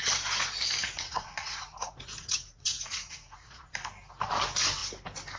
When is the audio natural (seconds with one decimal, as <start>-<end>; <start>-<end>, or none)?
0.0-0.8; 3.7-5.4